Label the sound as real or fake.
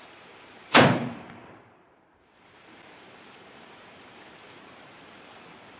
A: fake